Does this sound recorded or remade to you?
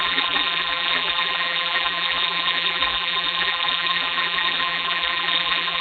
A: remade